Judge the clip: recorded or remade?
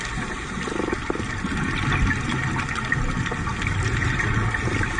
recorded